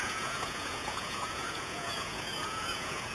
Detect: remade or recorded remade